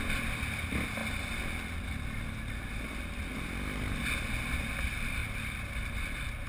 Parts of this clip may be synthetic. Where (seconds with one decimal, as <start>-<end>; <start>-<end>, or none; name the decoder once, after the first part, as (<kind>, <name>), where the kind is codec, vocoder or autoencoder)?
5.2-6.5 (vocoder, BigVGAN v2)